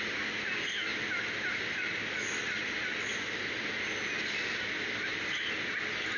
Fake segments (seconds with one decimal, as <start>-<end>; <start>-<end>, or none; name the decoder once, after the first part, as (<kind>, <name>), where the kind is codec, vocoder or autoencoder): none